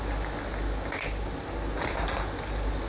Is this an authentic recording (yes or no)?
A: yes